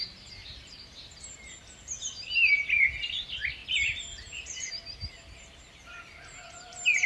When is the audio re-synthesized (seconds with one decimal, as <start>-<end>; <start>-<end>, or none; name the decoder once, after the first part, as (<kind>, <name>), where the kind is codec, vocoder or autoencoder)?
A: 0.4-1.3 (vocoder, BigVGAN v2); 3.6-4.7